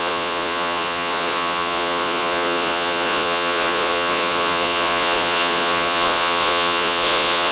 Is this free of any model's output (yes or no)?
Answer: no